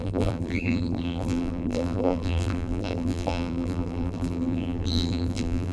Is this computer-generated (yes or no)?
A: yes